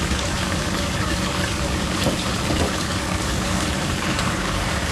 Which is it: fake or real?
fake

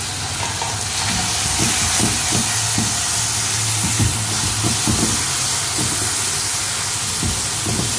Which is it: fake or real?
real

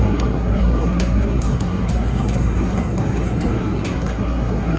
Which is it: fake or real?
fake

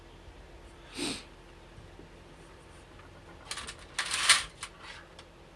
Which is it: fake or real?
real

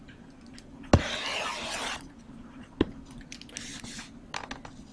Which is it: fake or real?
real